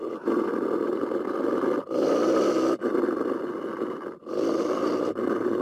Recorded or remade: recorded